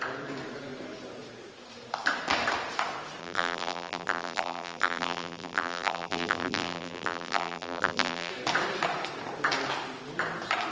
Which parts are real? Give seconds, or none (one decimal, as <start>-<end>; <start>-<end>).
0.0-3.2; 8.3-10.7